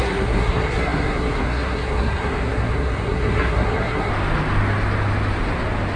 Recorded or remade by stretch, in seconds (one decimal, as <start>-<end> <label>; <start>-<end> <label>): 0.0-4.1 remade; 4.1-6.0 recorded